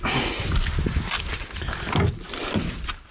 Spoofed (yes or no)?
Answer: no